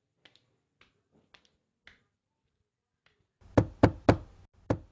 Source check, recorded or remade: recorded